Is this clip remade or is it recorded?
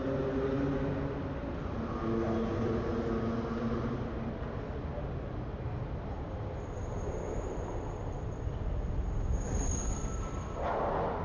recorded